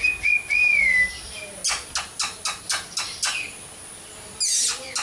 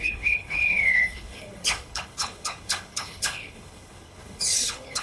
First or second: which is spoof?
second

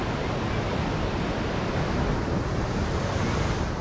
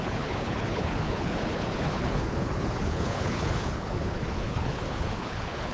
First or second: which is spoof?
second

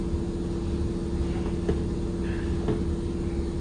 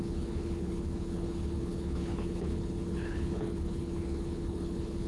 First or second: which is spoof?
second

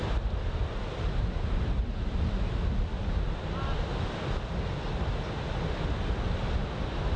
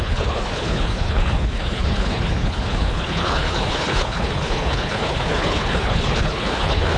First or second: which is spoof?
second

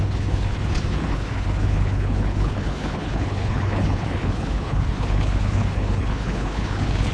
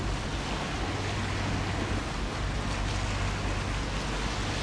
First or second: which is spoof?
first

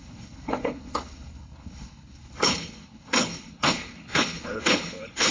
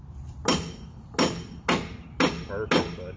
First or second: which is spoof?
first